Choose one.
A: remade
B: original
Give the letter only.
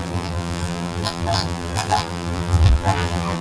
A